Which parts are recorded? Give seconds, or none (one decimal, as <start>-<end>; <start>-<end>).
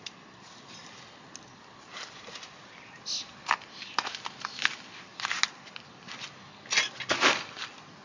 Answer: 0.0-8.0